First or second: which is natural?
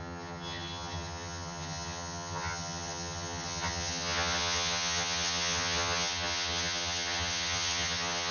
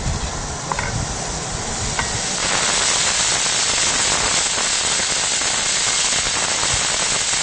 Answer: second